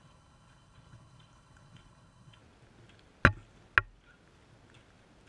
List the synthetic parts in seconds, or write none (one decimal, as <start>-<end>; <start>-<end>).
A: 0.0-2.4